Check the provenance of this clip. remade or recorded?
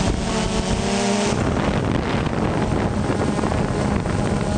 recorded